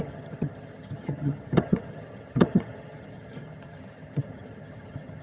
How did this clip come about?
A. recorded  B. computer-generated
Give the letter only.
B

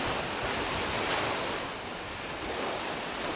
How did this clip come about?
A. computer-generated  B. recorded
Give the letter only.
B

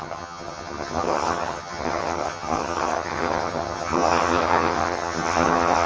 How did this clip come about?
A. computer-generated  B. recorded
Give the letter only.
A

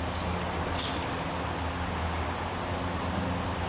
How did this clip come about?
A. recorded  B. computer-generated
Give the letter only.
A